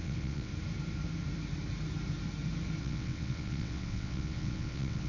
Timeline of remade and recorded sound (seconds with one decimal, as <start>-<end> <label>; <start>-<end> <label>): 0.0-0.5 remade; 0.5-2.8 recorded; 2.8-5.1 remade